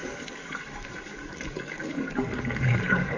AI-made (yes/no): yes